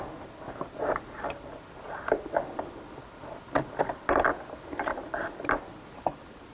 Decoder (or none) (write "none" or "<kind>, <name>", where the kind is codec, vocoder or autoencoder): none